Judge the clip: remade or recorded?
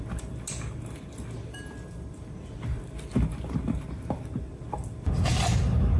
recorded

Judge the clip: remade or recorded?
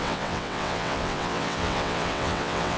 remade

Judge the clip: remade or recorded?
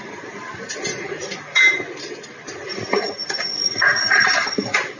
recorded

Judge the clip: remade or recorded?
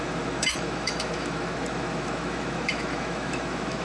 remade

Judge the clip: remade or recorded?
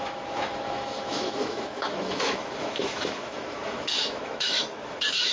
remade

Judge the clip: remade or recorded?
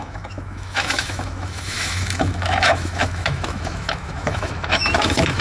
remade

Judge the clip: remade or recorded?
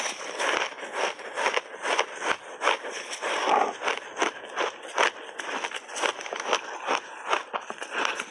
recorded